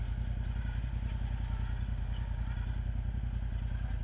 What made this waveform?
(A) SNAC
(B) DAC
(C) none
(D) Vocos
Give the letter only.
C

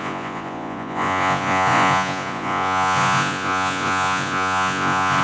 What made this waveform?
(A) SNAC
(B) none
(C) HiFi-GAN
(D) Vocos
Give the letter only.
D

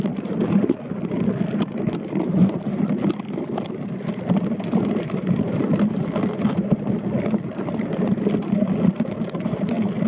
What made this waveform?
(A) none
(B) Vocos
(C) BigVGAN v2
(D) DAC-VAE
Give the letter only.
A